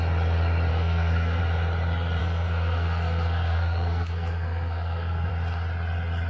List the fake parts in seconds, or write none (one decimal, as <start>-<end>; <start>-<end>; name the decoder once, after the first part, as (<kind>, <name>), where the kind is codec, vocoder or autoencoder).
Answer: 0.7-1.4 (codec, SNAC); 2.2-5.3